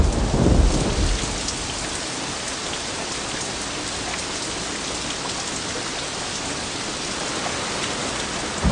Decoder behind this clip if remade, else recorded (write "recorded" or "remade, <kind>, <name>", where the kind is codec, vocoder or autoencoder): recorded